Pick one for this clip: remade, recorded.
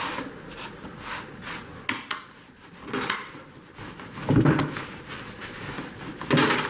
recorded